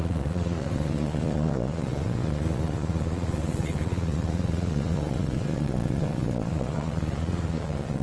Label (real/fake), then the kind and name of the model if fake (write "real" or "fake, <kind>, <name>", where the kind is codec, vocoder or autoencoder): fake, vocoder, Vocos